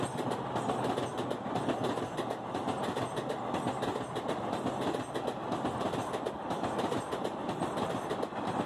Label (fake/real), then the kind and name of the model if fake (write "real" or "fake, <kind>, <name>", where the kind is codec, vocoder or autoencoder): real